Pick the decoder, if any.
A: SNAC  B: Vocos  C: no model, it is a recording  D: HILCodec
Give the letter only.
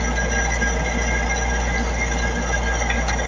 C